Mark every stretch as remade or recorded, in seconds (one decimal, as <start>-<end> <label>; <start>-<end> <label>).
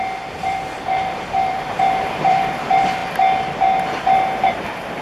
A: 0.0-3.0 remade; 3.0-3.6 recorded; 3.6-5.0 remade